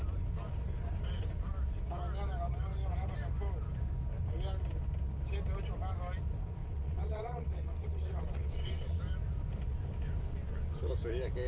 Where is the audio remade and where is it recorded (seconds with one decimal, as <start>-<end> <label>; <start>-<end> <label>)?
0.0-6.6 recorded; 6.6-9.0 remade; 9.0-10.3 recorded; 10.3-10.9 remade; 10.9-11.5 recorded